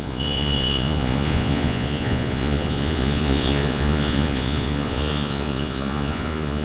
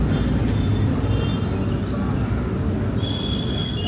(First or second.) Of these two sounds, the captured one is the second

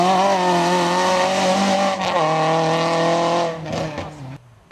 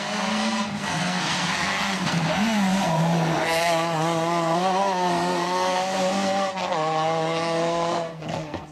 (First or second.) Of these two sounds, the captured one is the first